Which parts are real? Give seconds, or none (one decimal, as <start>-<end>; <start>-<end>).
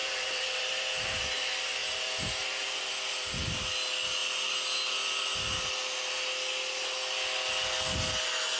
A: 1.2-1.8; 3.6-8.6